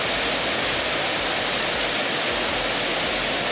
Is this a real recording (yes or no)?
yes